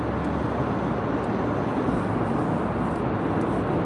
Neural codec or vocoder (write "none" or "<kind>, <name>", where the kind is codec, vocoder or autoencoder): none